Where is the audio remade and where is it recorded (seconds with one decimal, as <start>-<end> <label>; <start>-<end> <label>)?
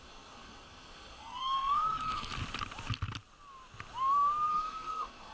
0.0-2.3 remade; 2.3-4.5 recorded; 4.5-5.3 remade